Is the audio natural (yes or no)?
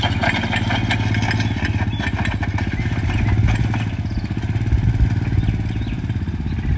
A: yes